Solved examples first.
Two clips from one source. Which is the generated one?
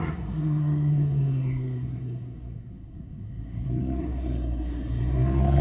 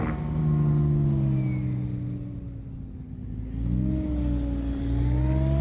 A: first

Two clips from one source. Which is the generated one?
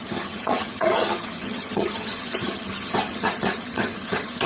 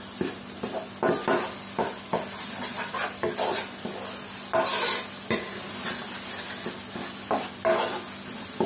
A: first